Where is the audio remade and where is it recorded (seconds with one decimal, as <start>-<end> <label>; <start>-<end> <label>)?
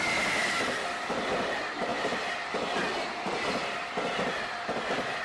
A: 0.0-5.2 recorded